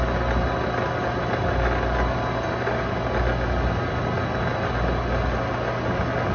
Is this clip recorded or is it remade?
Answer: recorded